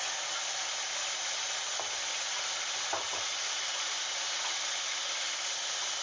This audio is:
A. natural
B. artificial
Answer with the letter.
A